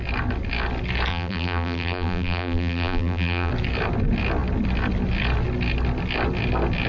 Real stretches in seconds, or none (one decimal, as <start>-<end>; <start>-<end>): 0.0-1.1; 3.5-6.9